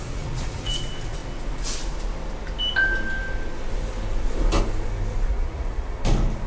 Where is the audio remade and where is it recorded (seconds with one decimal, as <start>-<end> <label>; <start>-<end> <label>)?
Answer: 0.0-0.7 remade; 0.7-5.3 recorded; 5.3-6.0 remade; 6.0-6.5 recorded

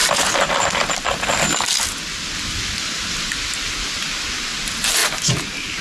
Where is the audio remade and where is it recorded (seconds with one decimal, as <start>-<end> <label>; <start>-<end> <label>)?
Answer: 0.0-5.8 recorded

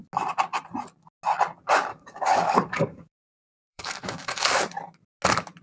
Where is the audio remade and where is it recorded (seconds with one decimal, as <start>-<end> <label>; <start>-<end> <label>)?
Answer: 0.0-1.9 recorded; 1.9-4.6 remade; 4.6-5.6 recorded